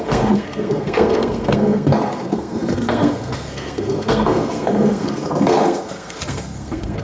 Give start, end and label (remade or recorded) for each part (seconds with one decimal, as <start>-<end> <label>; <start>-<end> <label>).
0.0-7.0 remade